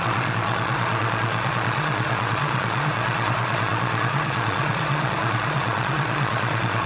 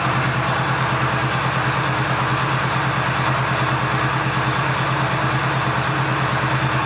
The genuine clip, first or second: second